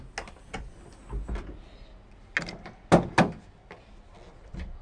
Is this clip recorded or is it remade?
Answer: recorded